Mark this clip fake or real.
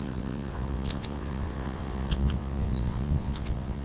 fake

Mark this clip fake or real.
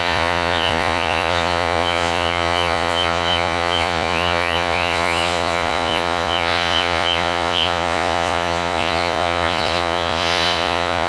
fake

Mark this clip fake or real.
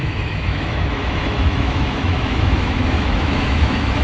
fake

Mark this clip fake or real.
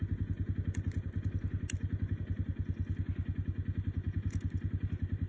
real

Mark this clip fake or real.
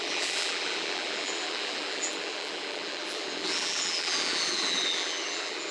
fake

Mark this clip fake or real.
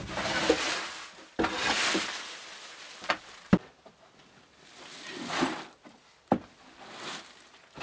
real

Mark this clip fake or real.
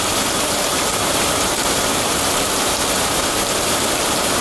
fake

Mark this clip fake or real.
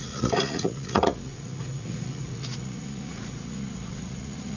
fake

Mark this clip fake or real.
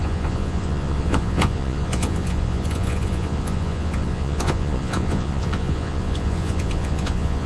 fake